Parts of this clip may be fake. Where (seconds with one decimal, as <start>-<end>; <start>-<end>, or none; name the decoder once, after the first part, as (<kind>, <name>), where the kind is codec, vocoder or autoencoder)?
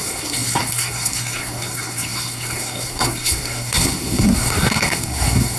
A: 0.0-5.6 (codec, SNAC)